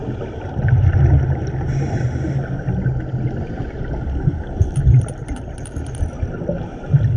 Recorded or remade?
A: recorded